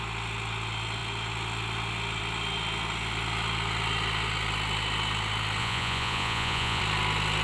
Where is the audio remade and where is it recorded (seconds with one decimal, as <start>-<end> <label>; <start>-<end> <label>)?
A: 0.0-5.6 recorded; 5.6-6.8 remade; 6.8-7.4 recorded